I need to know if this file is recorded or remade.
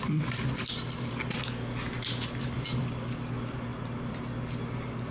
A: recorded